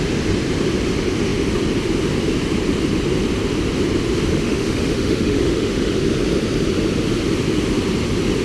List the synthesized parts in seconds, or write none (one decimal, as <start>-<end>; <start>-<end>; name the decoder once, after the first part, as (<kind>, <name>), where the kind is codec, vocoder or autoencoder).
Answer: 4.3-6.0 (autoencoder, DAC-VAE)